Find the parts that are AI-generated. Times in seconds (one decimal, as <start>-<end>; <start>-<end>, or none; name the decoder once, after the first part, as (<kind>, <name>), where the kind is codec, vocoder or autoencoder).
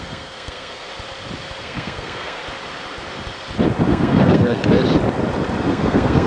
0.0-0.9 (codec, SNAC); 1.6-2.4; 3.9-4.6; 5.7-6.3